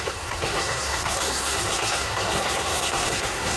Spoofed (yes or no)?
yes